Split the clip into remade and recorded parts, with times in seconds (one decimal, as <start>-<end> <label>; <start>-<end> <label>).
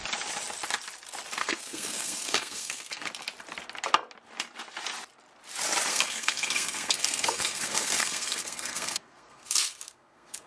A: 0.0-1.4 recorded; 1.4-3.1 remade; 3.1-5.9 recorded; 5.9-10.5 remade